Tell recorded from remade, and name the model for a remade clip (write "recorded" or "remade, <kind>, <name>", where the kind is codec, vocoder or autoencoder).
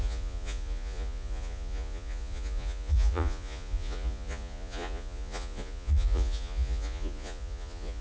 remade, vocoder, Vocos